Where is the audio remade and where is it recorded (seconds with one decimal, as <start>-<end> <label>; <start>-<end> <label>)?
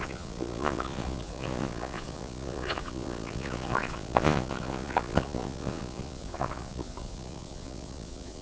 0.0-8.4 remade